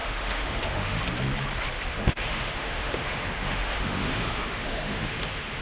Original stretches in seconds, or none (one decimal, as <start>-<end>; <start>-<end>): 1.0-1.9